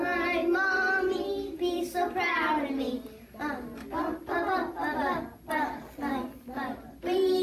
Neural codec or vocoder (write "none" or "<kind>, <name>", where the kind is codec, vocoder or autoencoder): none